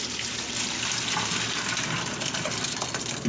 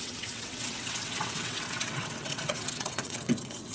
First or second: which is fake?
second